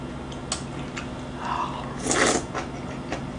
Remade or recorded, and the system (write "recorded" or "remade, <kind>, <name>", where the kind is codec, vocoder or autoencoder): recorded